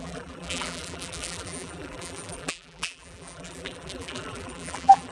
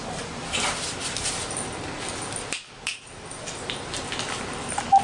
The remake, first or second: first